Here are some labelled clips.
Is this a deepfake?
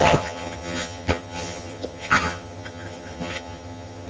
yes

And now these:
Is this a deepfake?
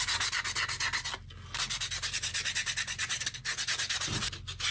no